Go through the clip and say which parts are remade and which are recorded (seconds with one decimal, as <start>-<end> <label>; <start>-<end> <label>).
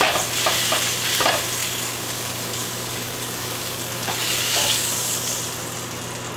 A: 0.0-1.6 recorded; 1.6-5.4 remade; 5.4-6.4 recorded